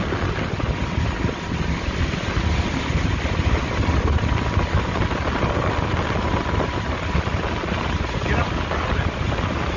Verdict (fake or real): real